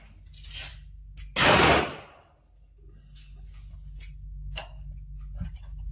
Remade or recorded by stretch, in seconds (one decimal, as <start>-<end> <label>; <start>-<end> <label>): 0.0-5.9 recorded